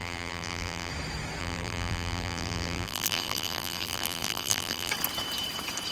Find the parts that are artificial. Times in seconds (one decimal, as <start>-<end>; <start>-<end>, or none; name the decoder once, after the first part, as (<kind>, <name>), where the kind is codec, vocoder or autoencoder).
0.0-0.9 (vocoder, BigVGAN v2); 1.4-4.9